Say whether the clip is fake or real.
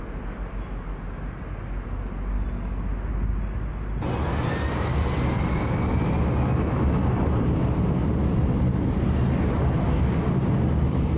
real